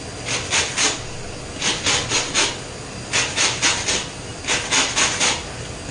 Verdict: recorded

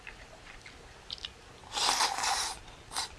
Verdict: recorded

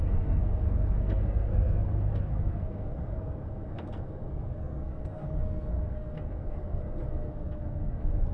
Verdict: remade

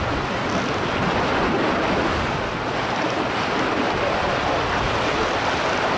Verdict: recorded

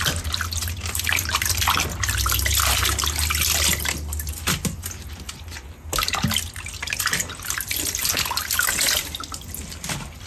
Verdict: recorded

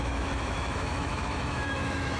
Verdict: remade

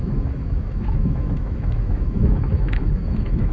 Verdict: remade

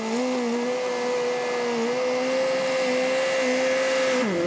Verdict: recorded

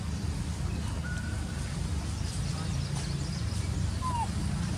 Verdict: recorded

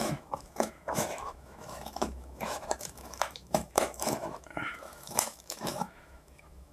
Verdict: remade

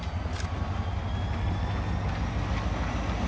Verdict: recorded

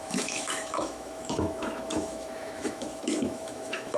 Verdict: remade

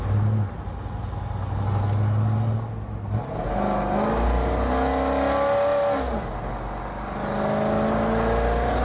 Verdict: recorded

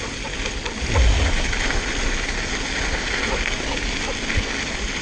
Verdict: recorded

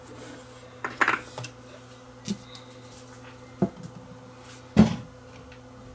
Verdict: recorded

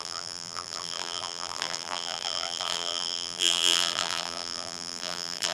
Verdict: remade